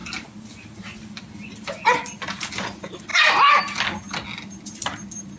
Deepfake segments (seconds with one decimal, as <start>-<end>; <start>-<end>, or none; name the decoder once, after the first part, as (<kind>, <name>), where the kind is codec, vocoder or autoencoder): none